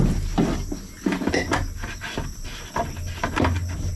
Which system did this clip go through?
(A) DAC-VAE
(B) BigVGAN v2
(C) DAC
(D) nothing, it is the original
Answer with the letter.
D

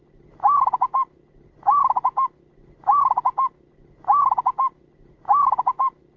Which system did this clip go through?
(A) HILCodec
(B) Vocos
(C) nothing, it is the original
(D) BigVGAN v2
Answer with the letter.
C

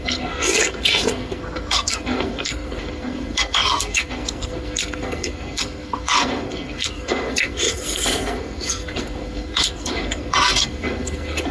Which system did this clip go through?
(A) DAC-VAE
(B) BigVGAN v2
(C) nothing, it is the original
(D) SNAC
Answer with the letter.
D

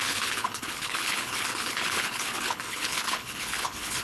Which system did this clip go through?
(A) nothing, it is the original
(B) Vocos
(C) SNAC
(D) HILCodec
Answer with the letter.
D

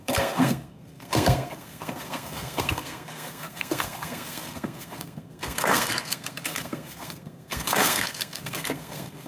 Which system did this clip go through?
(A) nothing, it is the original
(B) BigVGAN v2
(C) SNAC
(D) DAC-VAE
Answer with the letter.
C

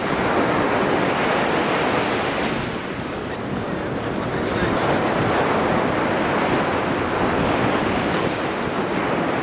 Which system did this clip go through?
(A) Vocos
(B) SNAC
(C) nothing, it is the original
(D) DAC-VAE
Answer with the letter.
C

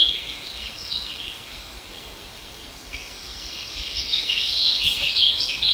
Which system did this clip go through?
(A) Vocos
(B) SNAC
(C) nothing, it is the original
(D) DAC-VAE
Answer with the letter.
B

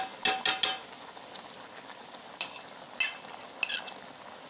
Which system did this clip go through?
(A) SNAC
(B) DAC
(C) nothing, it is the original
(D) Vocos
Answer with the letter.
C